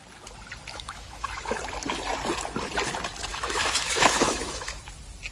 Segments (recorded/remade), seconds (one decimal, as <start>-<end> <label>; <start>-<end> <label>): 0.0-0.7 recorded; 0.7-1.6 remade; 1.6-3.3 recorded; 3.3-4.8 remade; 4.8-5.3 recorded